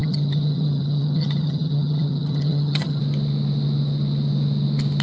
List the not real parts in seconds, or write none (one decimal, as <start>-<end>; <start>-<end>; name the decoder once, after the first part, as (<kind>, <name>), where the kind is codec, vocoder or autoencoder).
0.0-3.0 (vocoder, HiFi-GAN)